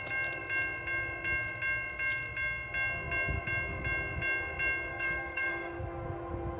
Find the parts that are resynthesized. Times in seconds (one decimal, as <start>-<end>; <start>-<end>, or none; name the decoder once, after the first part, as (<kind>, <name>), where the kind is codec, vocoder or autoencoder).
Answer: 4.9-5.8 (codec, DAC)

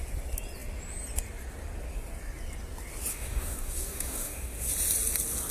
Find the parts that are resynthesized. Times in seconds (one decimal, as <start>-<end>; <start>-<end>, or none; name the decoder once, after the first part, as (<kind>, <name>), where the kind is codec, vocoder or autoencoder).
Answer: 3.1-4.7 (codec, DAC)

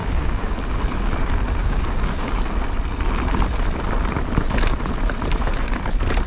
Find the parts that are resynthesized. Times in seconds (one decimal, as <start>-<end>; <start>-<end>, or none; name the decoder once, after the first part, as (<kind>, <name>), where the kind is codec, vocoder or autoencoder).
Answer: 0.0-0.6 (codec, DAC); 1.6-2.4

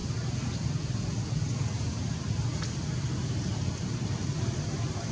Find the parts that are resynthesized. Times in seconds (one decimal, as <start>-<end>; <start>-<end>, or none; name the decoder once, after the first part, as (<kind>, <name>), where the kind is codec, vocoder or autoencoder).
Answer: none

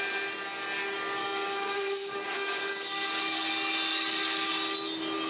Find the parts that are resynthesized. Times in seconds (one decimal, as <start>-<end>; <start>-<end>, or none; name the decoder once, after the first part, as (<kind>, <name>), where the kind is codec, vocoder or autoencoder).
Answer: 1.2-3.5 (codec, DAC); 3.9-4.5

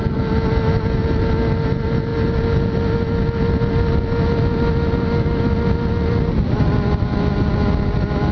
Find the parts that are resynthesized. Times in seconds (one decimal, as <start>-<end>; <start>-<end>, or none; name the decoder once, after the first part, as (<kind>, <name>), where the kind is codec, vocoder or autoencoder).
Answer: none